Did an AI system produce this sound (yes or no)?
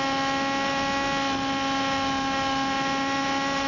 no